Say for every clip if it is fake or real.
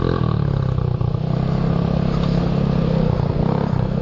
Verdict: real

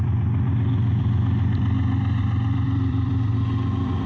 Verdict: fake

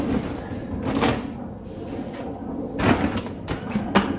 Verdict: real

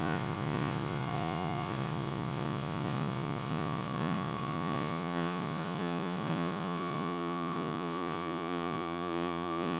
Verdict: fake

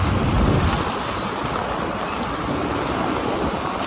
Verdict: real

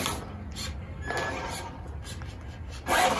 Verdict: real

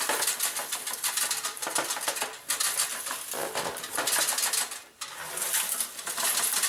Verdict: real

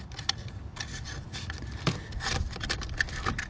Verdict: real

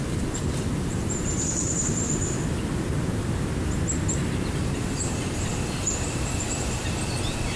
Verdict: fake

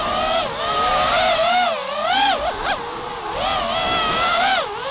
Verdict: real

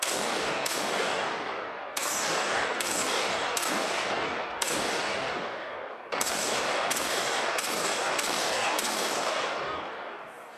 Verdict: fake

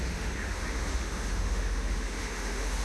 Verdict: fake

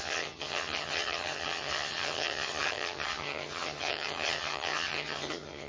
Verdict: fake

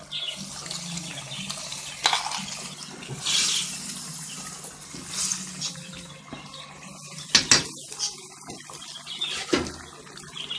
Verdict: real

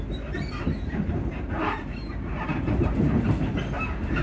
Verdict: fake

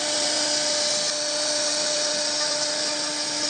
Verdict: real